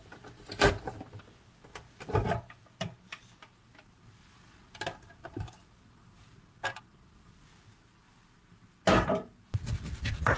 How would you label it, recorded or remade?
recorded